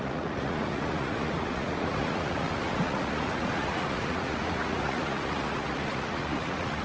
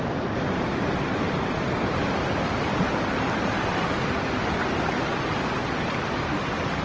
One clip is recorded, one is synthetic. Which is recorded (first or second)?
second